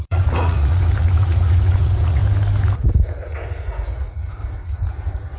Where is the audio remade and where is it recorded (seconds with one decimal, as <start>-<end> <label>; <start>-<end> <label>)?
0.0-2.2 remade; 2.2-3.3 recorded; 3.3-4.4 remade; 4.4-5.4 recorded